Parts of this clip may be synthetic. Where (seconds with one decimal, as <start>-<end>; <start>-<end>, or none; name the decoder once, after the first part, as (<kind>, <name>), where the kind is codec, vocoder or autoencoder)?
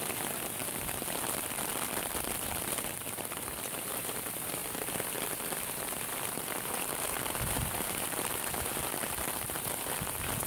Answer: 0.0-0.6 (vocoder, BigVGAN v2); 2.3-4.6; 5.7-10.5